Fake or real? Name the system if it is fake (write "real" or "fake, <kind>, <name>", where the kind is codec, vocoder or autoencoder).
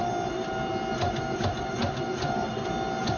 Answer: real